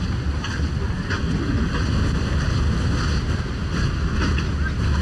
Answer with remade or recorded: recorded